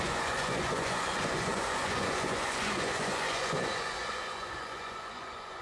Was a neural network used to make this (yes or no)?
yes